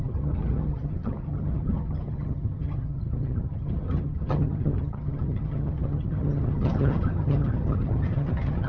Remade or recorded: remade